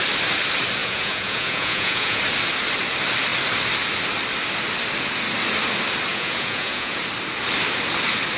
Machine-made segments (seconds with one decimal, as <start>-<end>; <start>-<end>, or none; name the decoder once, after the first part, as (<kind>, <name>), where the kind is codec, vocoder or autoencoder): 0.8-2.2 (vocoder, Vocos); 6.1-7.0